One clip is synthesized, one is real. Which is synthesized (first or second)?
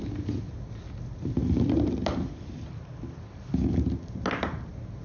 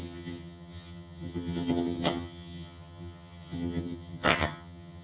second